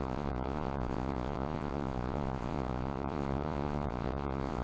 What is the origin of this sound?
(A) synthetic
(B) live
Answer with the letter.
A